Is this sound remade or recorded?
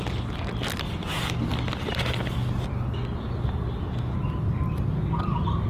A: recorded